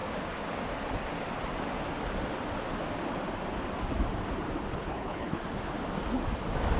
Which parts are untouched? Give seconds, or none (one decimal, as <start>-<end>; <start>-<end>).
0.0-4.7; 5.4-6.8